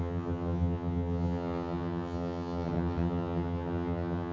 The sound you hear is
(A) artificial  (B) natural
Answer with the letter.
A